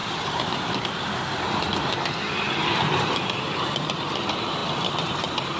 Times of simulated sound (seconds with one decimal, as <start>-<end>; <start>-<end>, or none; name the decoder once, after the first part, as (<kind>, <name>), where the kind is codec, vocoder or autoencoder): 0.0-3.4 (vocoder, BigVGAN v2)